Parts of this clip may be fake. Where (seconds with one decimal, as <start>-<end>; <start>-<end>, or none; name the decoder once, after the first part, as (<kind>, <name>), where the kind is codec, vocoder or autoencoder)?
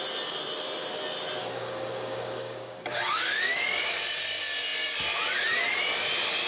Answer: 1.4-3.6 (codec, DAC)